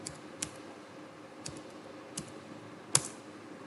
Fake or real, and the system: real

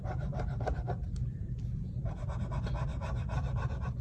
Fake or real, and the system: real